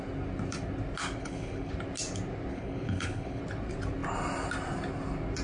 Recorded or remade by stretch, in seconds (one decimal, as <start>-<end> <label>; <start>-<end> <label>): 0.0-1.2 recorded; 1.2-1.7 remade; 1.7-2.5 recorded; 2.5-3.4 remade; 3.4-5.4 recorded

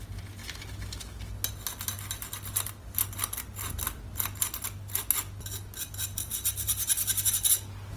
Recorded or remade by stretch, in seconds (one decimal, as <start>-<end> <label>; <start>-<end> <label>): 0.0-8.0 recorded

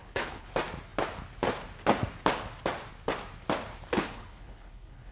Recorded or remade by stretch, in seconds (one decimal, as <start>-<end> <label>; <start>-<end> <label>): 0.0-0.5 remade; 0.5-3.9 recorded; 3.9-5.1 remade

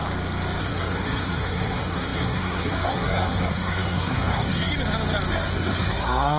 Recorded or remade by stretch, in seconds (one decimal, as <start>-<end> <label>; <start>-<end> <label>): 0.0-0.6 recorded; 0.6-4.7 remade; 4.7-5.3 recorded; 5.3-6.4 remade

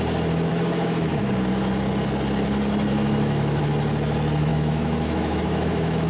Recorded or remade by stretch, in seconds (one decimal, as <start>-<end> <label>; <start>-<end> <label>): 0.0-0.5 recorded; 0.5-1.2 remade; 1.2-2.9 recorded; 2.9-3.6 remade; 3.6-4.5 recorded; 4.5-6.1 remade